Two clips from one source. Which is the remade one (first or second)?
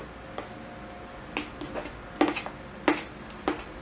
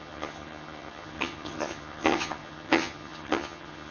second